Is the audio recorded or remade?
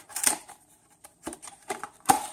remade